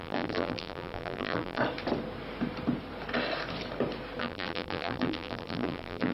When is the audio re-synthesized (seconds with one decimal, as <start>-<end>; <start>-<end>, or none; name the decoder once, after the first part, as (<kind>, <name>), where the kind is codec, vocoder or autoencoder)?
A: 0.0-1.6 (vocoder, BigVGAN v2); 4.2-6.1